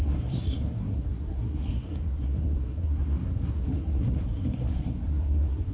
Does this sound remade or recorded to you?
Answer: remade